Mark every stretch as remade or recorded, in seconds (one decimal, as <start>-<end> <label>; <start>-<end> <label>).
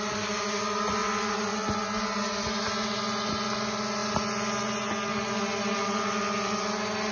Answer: 0.0-7.1 recorded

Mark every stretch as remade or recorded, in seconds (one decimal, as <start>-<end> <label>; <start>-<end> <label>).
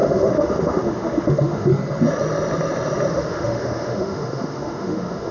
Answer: 0.0-1.7 remade; 1.7-3.1 recorded; 3.1-5.3 remade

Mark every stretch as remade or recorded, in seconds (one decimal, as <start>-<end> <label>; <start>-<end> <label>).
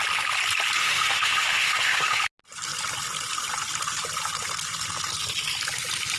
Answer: 0.0-0.8 recorded; 0.8-2.2 remade; 2.2-6.2 recorded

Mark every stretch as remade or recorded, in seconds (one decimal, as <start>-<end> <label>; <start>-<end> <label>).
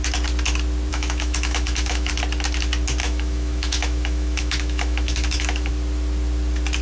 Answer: 0.0-0.9 recorded; 0.9-2.1 remade; 2.1-3.0 recorded; 3.0-5.7 remade; 5.7-6.8 recorded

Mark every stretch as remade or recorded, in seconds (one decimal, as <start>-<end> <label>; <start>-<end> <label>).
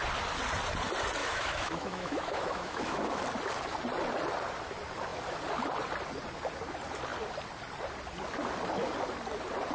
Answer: 0.0-1.2 recorded; 1.2-3.2 remade; 3.2-9.7 recorded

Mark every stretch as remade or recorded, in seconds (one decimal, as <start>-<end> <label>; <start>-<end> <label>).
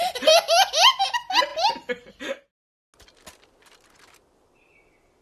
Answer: 0.0-5.2 recorded